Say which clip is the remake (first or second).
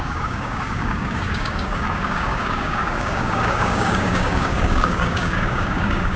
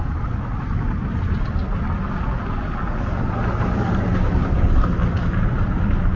first